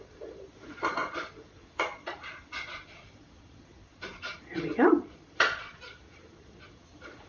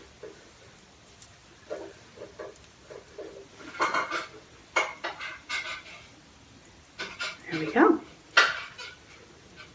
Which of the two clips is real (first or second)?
second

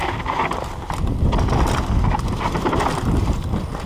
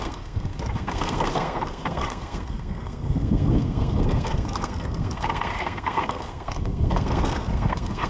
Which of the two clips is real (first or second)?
first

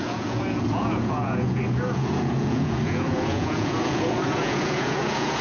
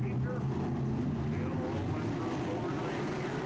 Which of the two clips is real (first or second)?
second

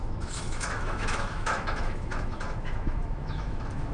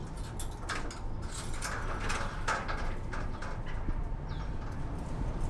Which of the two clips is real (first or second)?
second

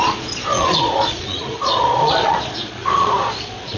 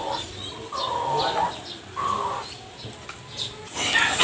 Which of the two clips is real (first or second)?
second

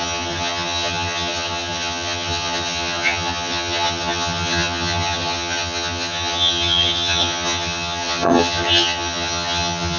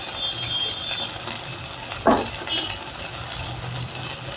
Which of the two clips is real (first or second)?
second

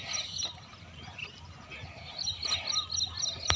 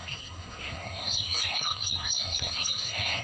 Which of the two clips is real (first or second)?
first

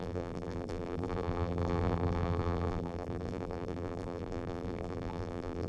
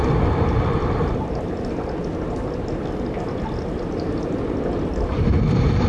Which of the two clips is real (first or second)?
second